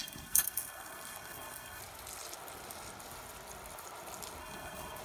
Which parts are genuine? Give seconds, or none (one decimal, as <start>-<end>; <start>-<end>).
1.8-4.4